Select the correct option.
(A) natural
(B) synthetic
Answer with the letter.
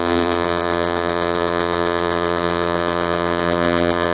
B